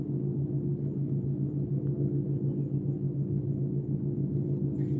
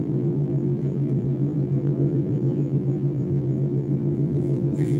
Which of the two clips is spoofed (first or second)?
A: second